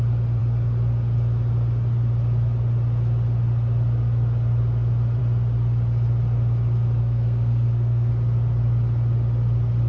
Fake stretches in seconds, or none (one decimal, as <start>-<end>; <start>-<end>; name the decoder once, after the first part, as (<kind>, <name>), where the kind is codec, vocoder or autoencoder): 7.0-8.1 (codec, SNAC)